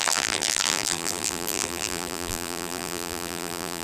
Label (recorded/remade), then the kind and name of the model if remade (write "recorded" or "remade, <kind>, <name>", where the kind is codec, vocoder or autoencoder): remade, vocoder, BigVGAN v2